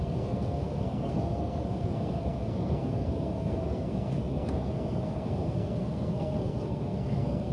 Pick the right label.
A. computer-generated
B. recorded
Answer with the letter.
A